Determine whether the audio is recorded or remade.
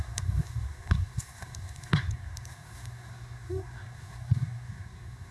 remade